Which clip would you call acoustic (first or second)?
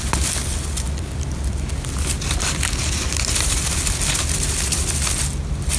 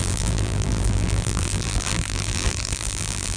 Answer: first